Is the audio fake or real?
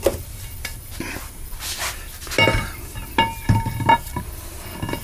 real